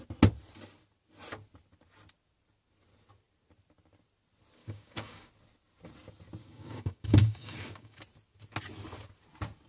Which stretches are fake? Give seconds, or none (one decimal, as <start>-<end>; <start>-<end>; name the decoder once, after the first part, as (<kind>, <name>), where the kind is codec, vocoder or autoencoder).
4.6-5.3 (codec, DAC); 6.4-8.0

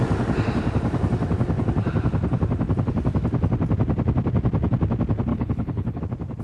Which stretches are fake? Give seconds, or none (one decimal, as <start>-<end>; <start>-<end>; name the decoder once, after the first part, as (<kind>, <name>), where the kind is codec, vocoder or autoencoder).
5.3-6.0 (codec, HILCodec)